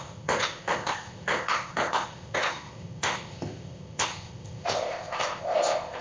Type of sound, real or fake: fake